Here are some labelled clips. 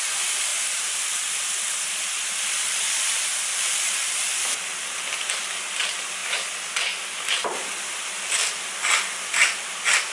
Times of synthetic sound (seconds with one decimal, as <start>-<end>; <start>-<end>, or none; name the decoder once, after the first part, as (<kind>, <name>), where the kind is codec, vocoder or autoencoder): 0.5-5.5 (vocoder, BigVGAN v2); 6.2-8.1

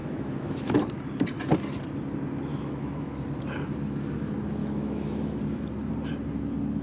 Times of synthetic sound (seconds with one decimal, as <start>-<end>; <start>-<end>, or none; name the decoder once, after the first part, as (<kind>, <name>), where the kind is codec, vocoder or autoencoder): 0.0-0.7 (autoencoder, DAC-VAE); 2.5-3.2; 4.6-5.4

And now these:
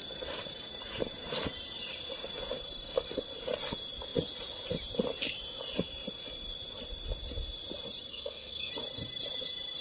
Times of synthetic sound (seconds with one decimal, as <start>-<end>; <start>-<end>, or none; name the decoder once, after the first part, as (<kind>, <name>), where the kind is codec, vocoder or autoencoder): 8.1-8.7 (autoencoder, DAC-VAE)